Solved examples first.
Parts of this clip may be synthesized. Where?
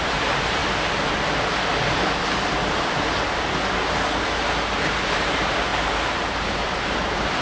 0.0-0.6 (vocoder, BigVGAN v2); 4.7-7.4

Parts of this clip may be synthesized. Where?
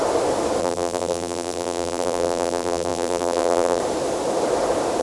0.6-3.8 (vocoder, BigVGAN v2)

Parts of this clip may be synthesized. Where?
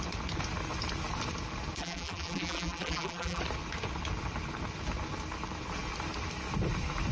1.8-3.4 (vocoder, BigVGAN v2)